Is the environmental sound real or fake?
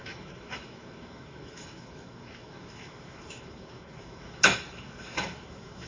fake